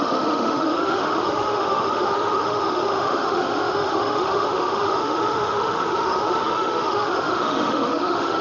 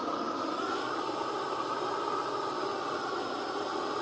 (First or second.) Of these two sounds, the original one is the second